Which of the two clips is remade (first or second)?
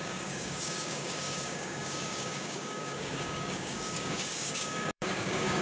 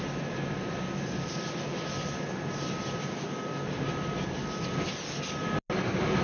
first